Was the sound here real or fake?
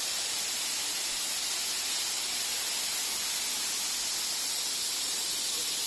real